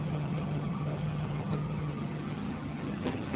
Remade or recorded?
remade